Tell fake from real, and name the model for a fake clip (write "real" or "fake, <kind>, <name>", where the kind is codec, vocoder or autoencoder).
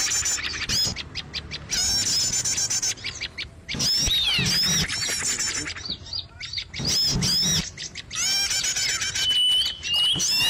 real